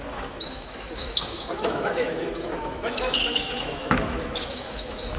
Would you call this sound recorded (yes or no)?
no